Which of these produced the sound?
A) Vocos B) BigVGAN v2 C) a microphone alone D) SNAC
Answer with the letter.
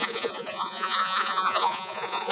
A